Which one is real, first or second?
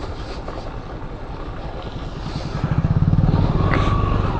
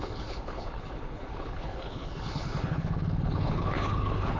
first